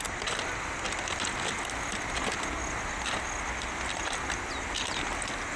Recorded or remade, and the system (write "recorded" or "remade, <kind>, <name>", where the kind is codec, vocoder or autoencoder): recorded